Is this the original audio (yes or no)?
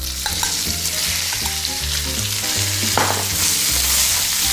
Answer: yes